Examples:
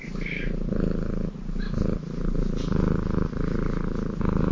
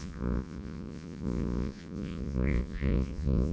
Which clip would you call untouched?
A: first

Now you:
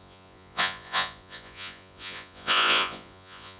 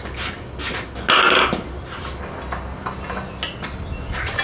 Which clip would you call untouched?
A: second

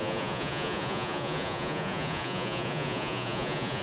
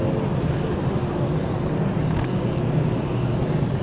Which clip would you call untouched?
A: second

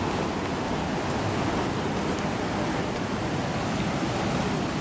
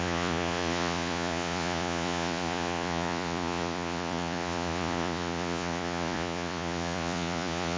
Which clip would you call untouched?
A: first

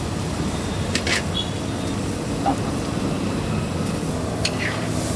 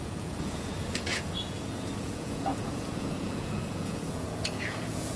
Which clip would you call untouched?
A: first